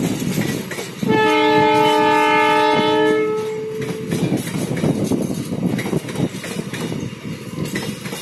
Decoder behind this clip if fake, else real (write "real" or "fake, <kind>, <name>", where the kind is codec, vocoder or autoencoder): real